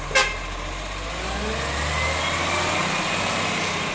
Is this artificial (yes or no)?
no